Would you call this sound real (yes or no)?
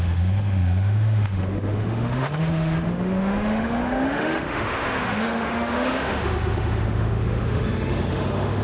no